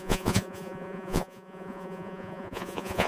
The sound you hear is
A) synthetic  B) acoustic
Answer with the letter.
A